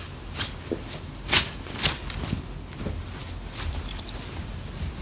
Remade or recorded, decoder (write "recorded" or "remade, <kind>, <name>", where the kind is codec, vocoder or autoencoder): recorded